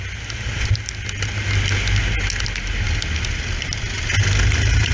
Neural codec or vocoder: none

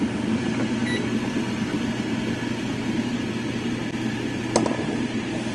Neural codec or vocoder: none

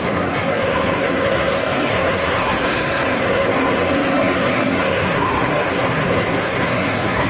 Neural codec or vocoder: codec, SNAC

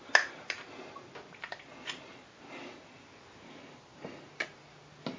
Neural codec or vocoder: none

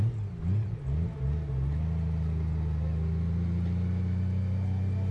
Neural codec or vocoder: none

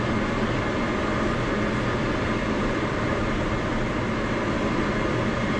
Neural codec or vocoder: none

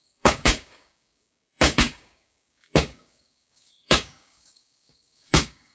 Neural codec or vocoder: codec, DAC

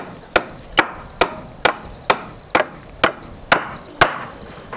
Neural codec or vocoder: none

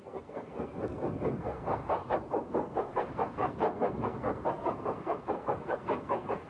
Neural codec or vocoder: codec, SNAC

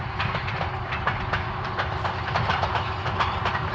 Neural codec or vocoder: none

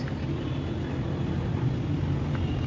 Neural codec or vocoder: none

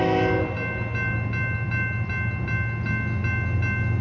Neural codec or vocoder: none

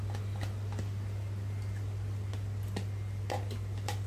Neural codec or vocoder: none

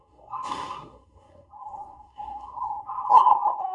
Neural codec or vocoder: codec, SNAC